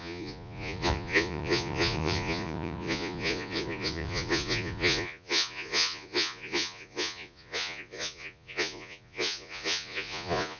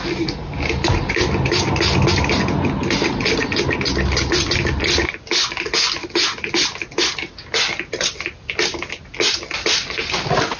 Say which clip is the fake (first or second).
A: first